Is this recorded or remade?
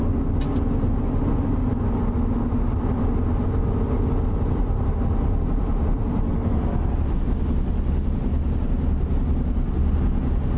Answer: recorded